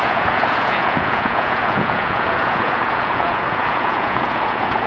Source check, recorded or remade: remade